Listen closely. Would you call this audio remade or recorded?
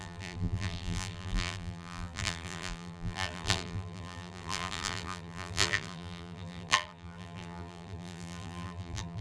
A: remade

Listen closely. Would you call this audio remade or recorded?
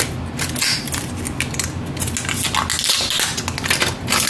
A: recorded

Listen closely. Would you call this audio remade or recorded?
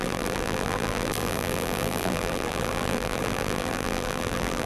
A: remade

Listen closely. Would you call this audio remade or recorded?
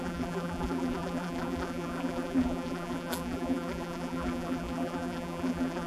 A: remade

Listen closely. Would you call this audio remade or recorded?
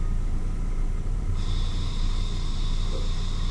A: remade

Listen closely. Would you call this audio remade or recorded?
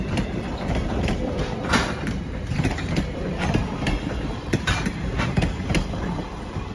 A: remade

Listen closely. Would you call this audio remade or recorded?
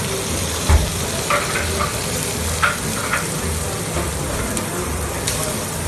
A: remade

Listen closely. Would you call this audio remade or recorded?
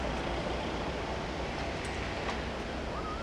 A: recorded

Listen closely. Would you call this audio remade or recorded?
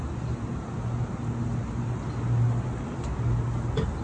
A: recorded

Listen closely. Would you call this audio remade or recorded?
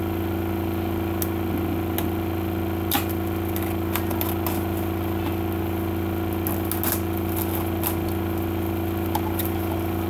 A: recorded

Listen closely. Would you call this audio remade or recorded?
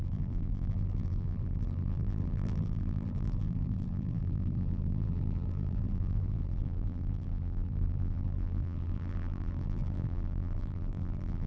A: remade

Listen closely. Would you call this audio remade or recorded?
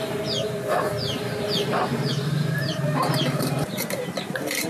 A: remade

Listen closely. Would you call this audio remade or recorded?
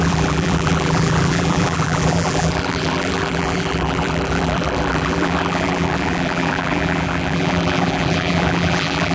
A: remade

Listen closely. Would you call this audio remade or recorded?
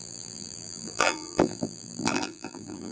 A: remade